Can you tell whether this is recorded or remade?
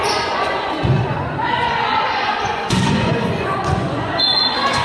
remade